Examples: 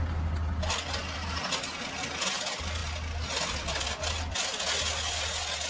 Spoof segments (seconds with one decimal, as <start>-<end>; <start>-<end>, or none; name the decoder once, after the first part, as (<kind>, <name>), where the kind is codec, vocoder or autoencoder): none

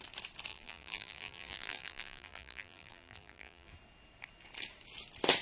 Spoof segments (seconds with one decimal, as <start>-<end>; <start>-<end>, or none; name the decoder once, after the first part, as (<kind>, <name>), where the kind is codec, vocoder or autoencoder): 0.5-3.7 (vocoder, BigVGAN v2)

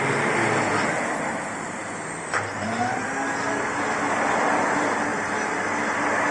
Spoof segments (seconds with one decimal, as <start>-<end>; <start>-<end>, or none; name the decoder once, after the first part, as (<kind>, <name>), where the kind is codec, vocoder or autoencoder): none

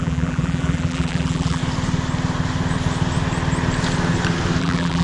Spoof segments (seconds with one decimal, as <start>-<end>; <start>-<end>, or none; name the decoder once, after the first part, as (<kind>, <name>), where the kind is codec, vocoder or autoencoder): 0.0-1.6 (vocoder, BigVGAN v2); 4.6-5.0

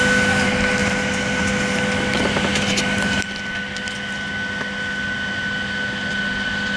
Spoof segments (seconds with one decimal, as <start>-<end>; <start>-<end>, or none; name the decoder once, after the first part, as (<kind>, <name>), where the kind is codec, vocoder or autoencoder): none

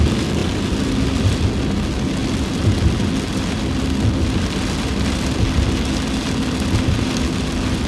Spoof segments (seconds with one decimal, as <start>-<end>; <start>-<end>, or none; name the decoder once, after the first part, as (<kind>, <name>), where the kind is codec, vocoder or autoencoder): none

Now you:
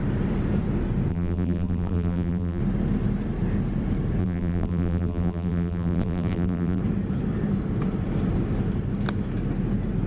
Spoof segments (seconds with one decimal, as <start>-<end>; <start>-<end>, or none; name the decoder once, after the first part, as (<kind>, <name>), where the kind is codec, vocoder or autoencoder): 1.1-2.6 (vocoder, BigVGAN v2); 4.2-6.8

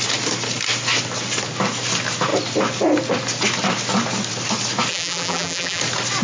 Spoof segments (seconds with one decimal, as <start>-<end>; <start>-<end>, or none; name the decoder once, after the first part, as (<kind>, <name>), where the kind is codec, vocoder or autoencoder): 4.9-5.8 (vocoder, BigVGAN v2)